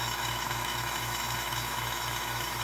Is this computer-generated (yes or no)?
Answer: yes